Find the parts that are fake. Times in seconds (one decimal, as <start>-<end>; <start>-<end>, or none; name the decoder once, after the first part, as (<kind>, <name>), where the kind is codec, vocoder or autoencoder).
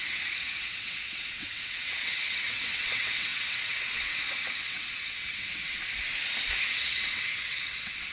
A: 0.0-5.8 (vocoder, WaveNeXt); 6.6-8.1